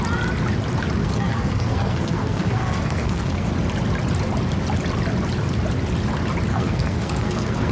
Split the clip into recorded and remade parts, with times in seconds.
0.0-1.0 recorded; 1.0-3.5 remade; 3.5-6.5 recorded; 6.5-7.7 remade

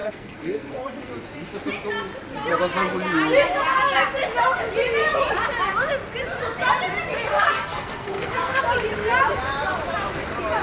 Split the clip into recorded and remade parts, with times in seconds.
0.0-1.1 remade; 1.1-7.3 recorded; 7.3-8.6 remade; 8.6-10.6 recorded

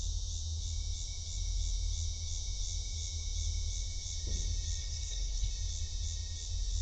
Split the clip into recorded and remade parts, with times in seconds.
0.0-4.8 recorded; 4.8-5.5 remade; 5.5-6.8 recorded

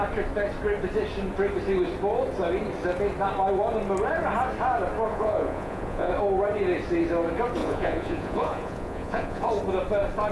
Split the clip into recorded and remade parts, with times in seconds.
0.0-5.1 recorded; 5.1-6.1 remade; 6.1-7.6 recorded; 7.6-9.5 remade; 9.5-10.3 recorded

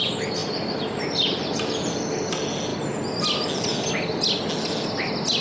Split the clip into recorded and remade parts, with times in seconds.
0.0-5.4 recorded